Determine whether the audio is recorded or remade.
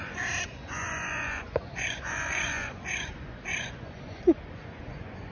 remade